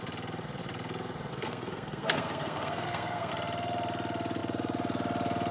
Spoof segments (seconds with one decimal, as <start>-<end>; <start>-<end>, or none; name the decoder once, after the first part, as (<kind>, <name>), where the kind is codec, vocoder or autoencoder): 1.3-3.3 (codec, SNAC)